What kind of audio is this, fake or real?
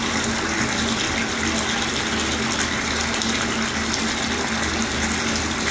real